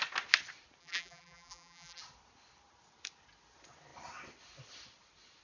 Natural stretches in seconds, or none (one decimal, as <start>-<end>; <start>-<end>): 0.0-0.8; 2.0-5.4